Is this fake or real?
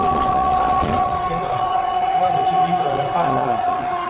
fake